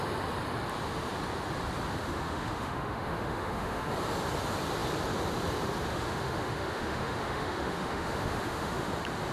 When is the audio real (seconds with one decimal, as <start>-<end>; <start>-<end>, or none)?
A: 0.0-1.9; 3.9-5.9; 8.9-9.3